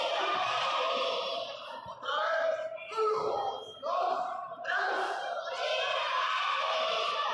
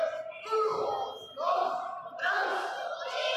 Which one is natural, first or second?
second